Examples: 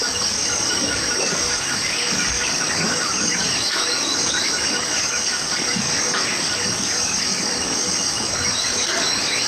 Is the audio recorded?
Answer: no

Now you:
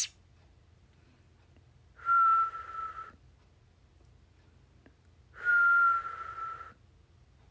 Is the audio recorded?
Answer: yes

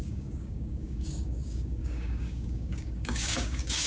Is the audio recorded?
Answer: no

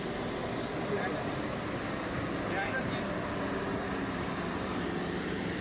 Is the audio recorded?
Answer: yes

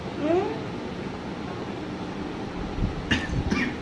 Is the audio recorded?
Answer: yes